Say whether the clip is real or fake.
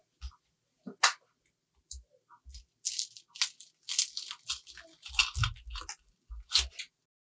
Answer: real